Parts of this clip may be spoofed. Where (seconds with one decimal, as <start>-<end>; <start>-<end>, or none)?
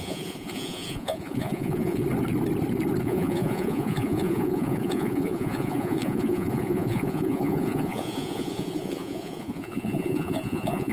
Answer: 0.0-2.0; 3.0-10.9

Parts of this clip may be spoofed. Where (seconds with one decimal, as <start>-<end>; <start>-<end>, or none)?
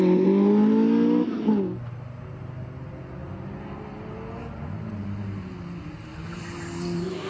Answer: none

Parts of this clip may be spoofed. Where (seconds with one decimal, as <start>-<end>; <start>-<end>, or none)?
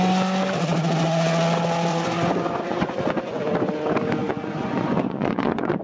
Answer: 1.9-3.4; 4.2-5.8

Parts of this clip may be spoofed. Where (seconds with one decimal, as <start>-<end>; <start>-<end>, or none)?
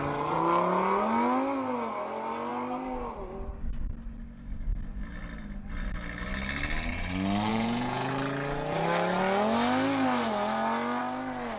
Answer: 7.5-8.1